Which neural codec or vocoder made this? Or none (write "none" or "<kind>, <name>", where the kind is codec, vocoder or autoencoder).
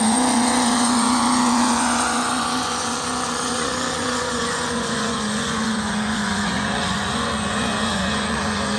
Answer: vocoder, Vocos